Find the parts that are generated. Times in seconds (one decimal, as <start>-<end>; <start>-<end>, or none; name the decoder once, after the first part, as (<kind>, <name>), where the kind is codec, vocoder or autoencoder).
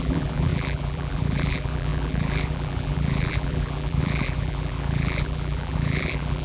0.0-6.4 (vocoder, BigVGAN v2)